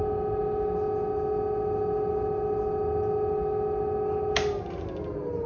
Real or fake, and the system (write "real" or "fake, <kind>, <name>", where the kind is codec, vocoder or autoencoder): real